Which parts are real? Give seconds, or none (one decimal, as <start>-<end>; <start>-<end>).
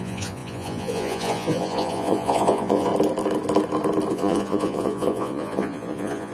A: 2.9-4.1